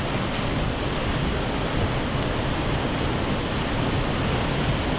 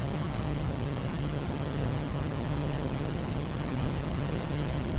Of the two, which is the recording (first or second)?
first